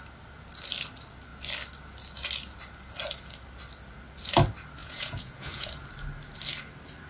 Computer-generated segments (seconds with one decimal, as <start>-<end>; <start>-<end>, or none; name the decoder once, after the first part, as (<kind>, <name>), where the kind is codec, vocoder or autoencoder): 4.8-5.7 (vocoder, Vocos)